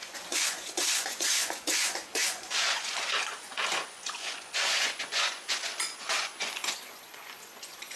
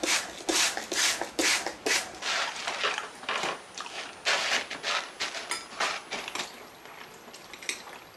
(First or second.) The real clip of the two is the second